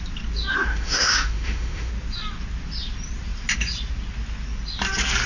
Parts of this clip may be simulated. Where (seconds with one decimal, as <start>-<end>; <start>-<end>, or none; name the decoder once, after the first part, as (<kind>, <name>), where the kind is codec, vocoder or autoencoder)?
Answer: 0.5-1.9 (autoencoder, DAC-VAE)